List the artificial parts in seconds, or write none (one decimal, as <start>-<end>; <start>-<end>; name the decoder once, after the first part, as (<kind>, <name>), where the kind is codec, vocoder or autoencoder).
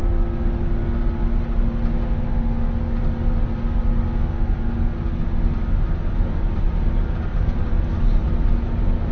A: 7.3-8.5 (vocoder, BigVGAN v2)